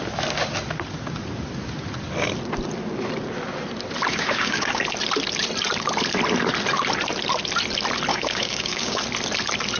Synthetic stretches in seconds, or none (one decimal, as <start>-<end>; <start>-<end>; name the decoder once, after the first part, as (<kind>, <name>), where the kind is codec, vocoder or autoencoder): 4.1-4.8 (codec, DAC); 8.1-9.0